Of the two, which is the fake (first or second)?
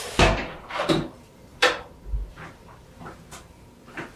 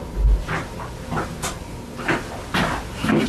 first